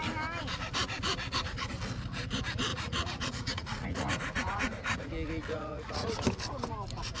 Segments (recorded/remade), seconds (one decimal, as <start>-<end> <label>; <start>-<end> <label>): 0.0-2.7 recorded; 2.7-5.1 remade; 5.1-5.5 recorded; 5.5-6.1 remade; 6.1-7.2 recorded